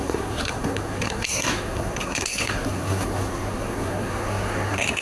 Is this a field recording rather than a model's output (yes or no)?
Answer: no